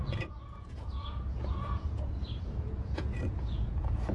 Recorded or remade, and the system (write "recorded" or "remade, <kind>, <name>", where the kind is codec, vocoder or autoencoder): remade, vocoder, Vocos